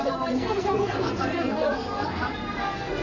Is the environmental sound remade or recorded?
remade